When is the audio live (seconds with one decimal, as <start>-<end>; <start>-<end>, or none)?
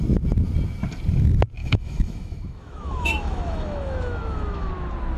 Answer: 0.0-1.6; 4.7-5.2